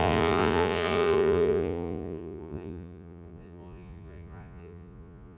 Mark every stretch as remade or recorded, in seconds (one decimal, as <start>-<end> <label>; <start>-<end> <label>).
0.0-5.4 remade